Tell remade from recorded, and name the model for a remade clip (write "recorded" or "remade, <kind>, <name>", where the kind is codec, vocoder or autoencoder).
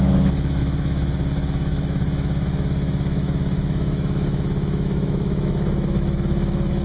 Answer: remade, autoencoder, DAC-VAE